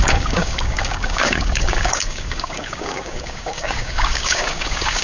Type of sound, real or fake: fake